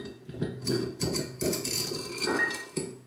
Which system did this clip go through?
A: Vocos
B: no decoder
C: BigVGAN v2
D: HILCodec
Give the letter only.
A